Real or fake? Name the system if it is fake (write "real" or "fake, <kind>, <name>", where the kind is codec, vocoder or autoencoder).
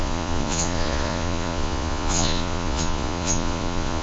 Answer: fake, vocoder, Vocos